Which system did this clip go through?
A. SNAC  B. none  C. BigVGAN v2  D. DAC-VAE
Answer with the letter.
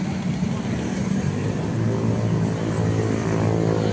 B